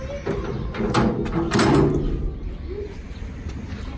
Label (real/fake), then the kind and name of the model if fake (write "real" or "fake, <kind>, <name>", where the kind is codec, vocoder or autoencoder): real